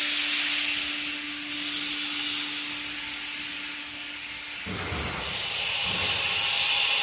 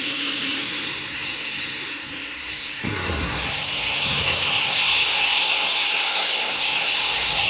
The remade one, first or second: second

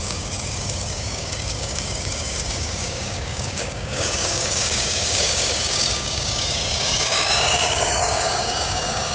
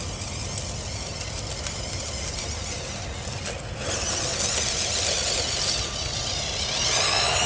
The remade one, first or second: first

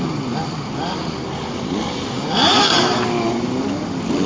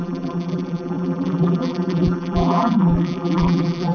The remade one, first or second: second